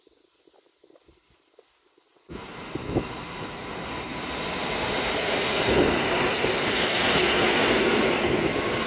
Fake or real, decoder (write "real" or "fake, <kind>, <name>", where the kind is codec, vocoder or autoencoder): real